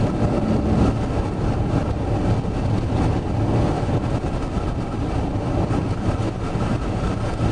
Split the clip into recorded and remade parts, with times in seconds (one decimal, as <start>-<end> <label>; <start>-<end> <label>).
0.0-7.5 recorded

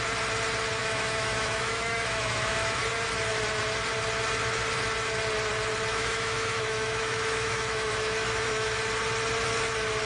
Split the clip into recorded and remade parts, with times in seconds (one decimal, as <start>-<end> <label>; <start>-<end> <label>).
0.0-0.8 recorded; 0.8-2.8 remade; 2.8-5.9 recorded; 5.9-8.8 remade; 8.8-10.1 recorded

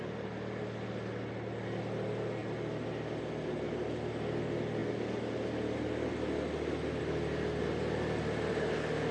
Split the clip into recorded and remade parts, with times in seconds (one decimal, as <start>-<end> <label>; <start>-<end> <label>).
0.0-9.1 recorded

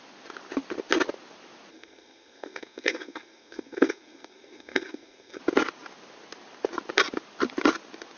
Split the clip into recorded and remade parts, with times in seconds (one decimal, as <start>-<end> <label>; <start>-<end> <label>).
0.0-1.7 recorded; 1.7-5.4 remade; 5.4-8.2 recorded

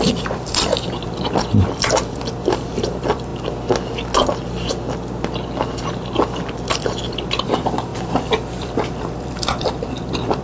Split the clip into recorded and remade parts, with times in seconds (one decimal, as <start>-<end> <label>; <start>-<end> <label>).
0.0-3.3 remade; 3.3-6.7 recorded; 6.7-10.4 remade